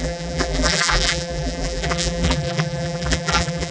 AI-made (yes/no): yes